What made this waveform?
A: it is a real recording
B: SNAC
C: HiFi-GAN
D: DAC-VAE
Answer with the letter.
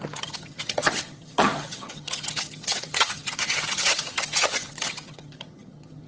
C